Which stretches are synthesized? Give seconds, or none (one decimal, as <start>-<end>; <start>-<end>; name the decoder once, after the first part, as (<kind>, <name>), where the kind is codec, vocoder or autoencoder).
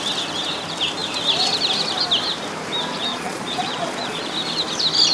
3.1-4.3 (vocoder, Vocos)